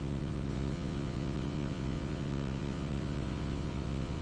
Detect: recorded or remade remade